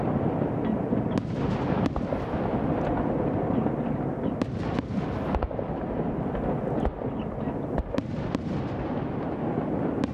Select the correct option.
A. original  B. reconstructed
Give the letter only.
A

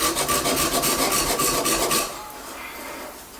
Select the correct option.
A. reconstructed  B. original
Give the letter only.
B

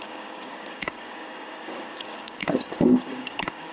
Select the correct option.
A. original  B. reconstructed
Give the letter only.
B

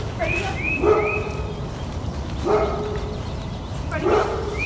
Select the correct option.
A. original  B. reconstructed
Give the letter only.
A